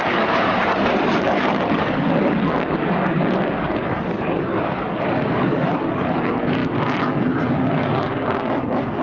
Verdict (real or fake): fake